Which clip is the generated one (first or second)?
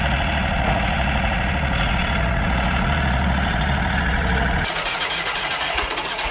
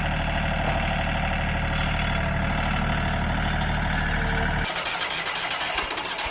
first